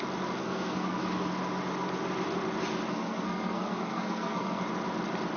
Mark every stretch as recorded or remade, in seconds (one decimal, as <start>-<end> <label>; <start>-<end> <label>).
0.0-0.4 recorded; 0.4-1.3 remade; 1.3-2.9 recorded; 2.9-4.6 remade; 4.6-5.4 recorded